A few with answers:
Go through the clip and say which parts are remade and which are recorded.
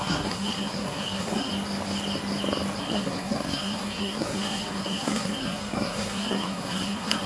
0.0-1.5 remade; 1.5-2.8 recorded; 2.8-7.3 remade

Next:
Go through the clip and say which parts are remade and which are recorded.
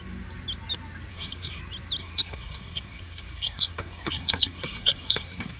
0.0-1.1 recorded; 1.1-1.6 remade; 1.6-2.0 recorded; 2.0-5.6 remade